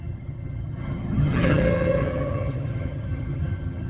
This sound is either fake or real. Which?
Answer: fake